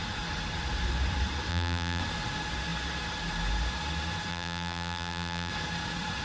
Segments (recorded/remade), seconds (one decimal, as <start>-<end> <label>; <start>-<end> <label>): 0.0-1.5 recorded; 1.5-2.0 remade; 2.0-4.3 recorded; 4.3-5.5 remade; 5.5-6.2 recorded